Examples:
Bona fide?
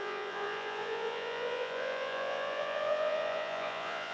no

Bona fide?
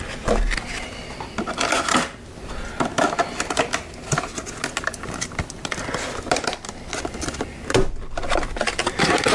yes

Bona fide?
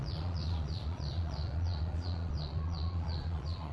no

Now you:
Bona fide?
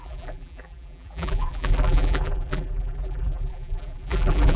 no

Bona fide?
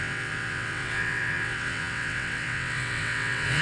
no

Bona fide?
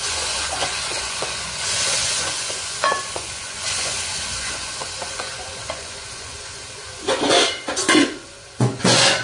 no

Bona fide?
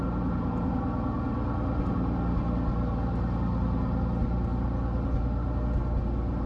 yes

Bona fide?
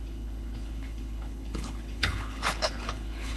no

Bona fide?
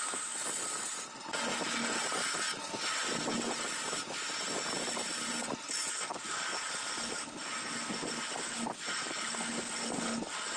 yes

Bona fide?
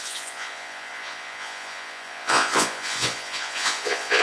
no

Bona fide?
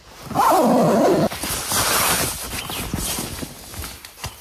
yes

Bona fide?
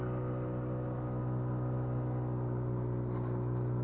yes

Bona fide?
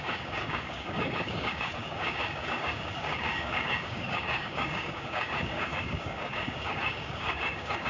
no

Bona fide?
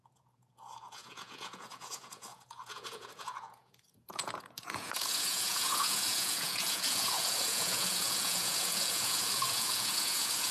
no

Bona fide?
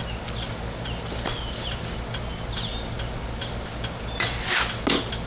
yes